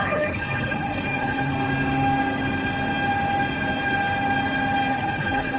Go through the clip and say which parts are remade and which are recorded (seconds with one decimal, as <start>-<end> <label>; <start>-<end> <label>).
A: 0.0-1.5 remade; 1.5-4.9 recorded; 4.9-5.6 remade